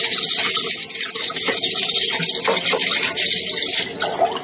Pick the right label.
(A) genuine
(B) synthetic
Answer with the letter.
A